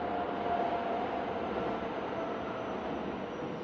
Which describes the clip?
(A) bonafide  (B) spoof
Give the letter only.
A